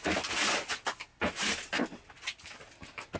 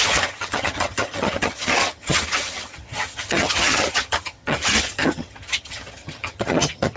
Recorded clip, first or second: first